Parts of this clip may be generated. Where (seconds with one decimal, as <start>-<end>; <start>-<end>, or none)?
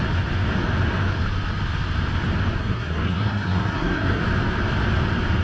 2.6-4.2